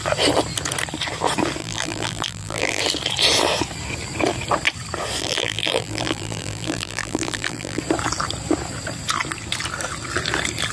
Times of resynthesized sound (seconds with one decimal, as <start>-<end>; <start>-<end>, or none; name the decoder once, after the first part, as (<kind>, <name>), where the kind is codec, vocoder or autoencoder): 1.6-2.8 (vocoder, BigVGAN v2); 5.2-7.8